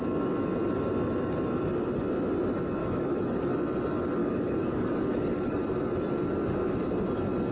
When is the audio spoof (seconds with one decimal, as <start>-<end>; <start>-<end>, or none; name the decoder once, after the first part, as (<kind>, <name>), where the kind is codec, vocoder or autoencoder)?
2.8-3.4 (codec, DAC); 4.2-5.6